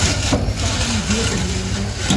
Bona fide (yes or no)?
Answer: yes